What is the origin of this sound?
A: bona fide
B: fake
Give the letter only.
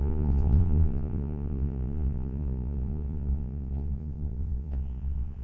B